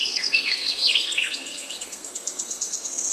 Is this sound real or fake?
fake